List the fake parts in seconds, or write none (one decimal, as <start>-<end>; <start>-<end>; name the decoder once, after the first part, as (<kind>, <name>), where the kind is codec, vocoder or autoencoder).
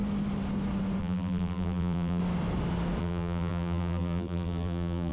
1.0-2.2 (vocoder, BigVGAN v2); 3.0-5.1